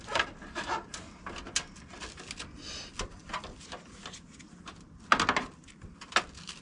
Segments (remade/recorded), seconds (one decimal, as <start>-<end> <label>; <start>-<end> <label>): 0.0-6.6 recorded